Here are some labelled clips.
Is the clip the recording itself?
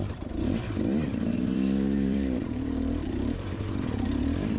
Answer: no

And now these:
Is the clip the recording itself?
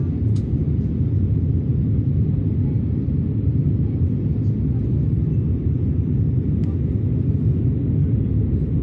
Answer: yes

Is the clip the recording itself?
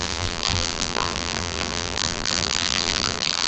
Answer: no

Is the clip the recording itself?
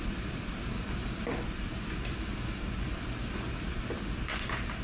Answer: no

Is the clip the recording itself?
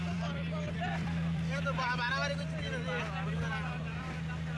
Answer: no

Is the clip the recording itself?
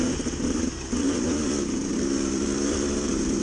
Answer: no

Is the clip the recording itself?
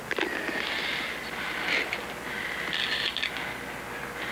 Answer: yes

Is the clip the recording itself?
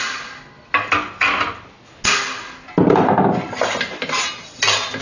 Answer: yes